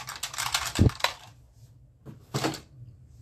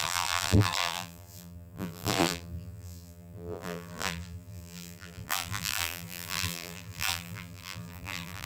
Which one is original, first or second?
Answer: first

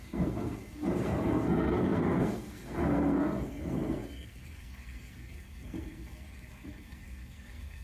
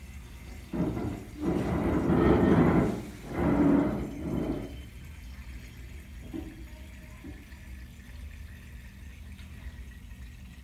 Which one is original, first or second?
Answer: second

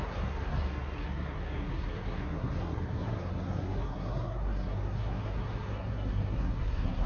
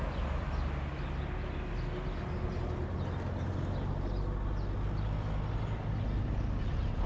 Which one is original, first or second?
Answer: second